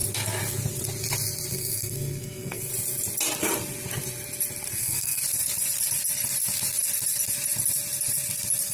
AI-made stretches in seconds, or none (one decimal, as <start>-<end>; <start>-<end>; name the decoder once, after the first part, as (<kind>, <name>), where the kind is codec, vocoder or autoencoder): 1.5-2.7 (codec, SNAC); 4.7-5.2